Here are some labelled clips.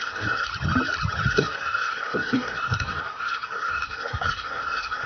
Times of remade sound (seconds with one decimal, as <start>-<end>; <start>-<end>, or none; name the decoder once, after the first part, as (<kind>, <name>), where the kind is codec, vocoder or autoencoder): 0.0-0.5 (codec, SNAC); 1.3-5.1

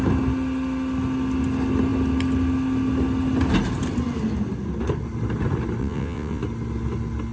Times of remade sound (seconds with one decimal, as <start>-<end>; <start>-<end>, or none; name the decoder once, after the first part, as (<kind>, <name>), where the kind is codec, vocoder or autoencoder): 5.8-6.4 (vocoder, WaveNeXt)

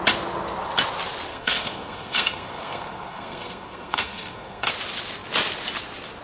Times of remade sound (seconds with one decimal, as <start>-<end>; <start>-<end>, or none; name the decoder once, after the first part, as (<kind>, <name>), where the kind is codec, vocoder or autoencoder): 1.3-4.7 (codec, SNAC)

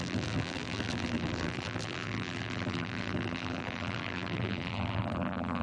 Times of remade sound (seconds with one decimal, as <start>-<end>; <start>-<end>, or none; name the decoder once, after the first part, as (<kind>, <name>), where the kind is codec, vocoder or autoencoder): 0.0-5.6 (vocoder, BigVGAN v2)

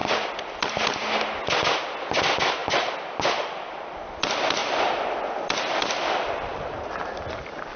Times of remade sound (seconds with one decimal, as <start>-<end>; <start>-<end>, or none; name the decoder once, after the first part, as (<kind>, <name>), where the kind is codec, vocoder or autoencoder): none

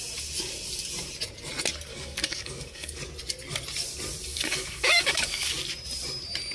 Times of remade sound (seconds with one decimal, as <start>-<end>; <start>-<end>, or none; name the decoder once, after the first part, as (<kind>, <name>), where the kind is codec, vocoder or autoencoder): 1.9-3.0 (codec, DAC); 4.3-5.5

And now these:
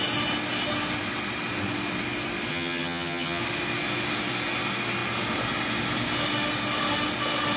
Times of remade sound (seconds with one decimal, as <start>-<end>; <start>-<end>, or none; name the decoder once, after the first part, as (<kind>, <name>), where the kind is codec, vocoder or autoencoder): 2.5-3.4 (vocoder, HiFi-GAN)

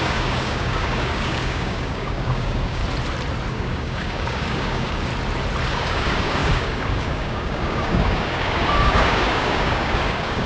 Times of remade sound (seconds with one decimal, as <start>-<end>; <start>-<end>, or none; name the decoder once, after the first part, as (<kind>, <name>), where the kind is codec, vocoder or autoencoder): 0.0-2.8 (codec, DAC); 3.5-5.1; 5.7-10.5